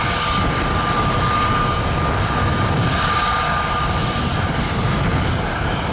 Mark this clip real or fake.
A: real